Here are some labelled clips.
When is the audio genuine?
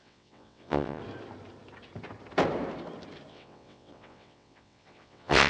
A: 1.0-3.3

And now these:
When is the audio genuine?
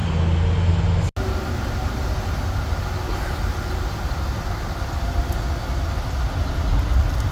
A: 0.0-7.3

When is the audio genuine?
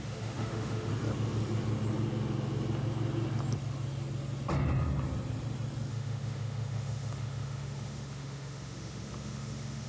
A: 0.9-5.9